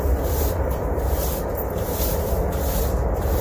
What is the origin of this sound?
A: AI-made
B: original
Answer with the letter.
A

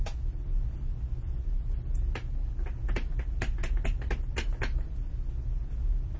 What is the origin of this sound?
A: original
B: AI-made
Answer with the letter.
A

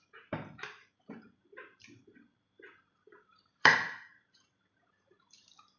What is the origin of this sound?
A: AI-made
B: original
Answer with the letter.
A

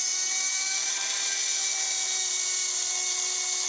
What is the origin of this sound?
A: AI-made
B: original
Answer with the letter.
B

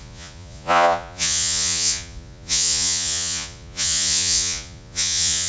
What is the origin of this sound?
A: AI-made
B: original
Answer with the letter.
A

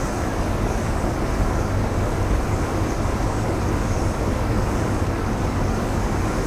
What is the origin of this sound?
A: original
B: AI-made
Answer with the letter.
B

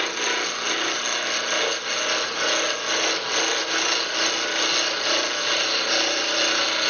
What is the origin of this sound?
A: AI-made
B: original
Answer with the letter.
B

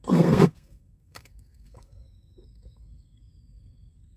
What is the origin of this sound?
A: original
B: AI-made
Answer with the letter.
B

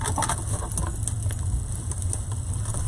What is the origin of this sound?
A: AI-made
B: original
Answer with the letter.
B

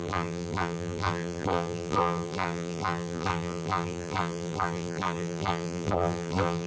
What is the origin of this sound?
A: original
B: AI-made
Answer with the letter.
B